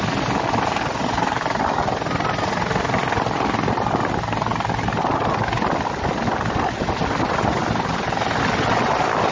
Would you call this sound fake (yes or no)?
no